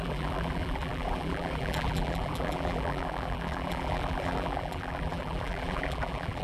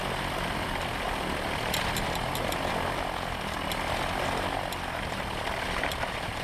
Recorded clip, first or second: second